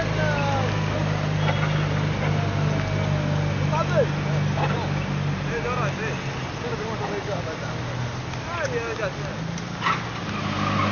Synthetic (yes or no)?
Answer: no